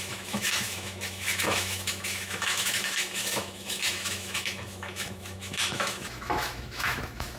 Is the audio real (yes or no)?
no